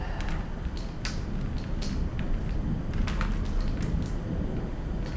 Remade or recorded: recorded